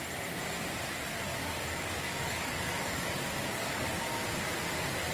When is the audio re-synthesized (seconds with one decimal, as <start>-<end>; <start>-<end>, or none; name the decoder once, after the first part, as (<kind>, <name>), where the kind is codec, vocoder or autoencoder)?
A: 1.3-4.2 (codec, DAC)